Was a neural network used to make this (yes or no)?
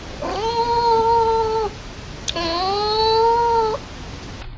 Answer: no